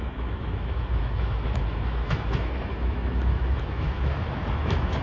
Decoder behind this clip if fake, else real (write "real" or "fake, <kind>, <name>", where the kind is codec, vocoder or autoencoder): fake, autoencoder, DAC-VAE